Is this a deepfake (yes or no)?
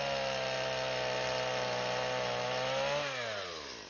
no